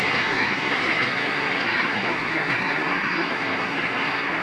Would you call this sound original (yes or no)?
no